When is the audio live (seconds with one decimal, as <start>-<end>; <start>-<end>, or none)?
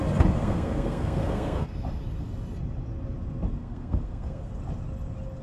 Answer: 0.0-0.4; 1.7-3.6; 4.5-5.4